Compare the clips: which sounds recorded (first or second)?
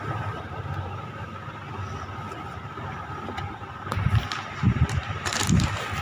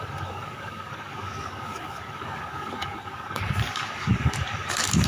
first